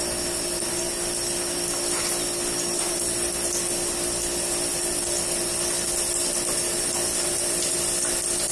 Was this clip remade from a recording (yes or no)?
no